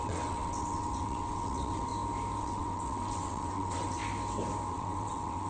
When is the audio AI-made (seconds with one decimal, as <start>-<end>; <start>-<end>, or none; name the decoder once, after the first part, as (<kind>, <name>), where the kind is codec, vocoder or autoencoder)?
0.0-1.9 (vocoder, WaveNeXt); 2.4-4.0; 4.7-5.5